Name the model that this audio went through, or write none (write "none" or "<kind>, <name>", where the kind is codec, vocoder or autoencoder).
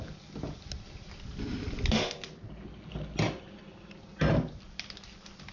none